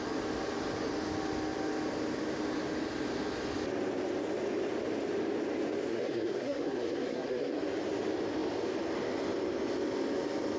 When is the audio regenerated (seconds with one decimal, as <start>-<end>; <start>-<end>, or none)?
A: 5.9-7.6